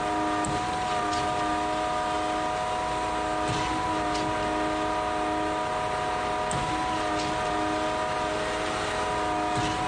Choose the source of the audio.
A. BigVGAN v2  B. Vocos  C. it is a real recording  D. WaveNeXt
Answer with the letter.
C